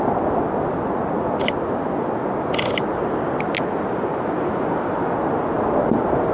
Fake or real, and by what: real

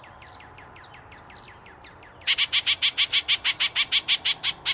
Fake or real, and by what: real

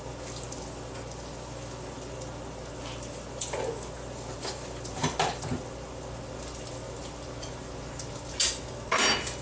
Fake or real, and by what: real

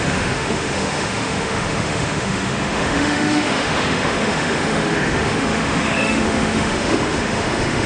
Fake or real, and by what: fake, autoencoder, DAC-VAE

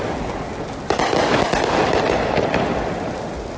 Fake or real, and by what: real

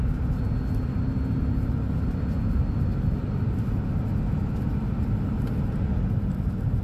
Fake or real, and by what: real